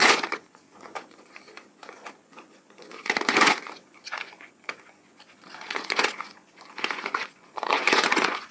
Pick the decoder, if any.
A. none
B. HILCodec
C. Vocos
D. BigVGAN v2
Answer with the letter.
C